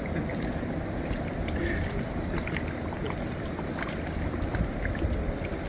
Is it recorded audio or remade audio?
recorded